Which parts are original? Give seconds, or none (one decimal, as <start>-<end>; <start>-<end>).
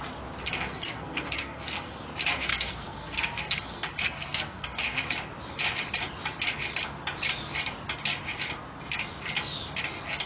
0.0-0.4; 2.0-2.5; 5.0-10.3